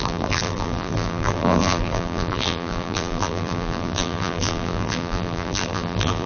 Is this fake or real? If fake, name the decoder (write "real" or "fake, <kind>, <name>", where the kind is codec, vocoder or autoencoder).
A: fake, vocoder, BigVGAN v2